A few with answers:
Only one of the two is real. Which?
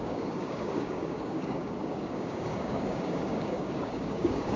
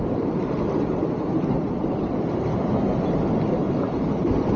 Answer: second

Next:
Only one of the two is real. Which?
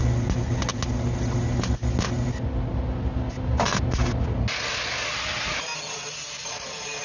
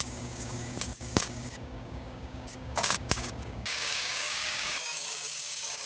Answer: first